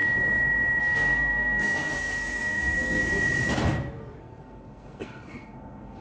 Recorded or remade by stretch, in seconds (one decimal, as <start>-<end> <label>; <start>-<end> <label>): 0.0-0.8 recorded; 0.8-3.0 remade; 3.0-4.2 recorded; 4.2-6.0 remade